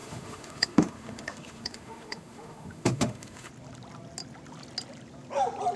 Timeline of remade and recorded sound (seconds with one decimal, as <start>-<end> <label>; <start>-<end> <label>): 0.0-3.5 remade; 3.5-5.8 recorded